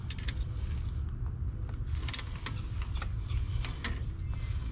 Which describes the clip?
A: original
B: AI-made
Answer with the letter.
A